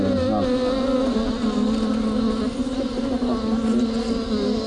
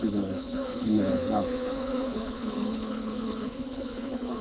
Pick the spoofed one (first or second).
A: second